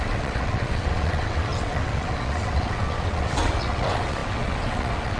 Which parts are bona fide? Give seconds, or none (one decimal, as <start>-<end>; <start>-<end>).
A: none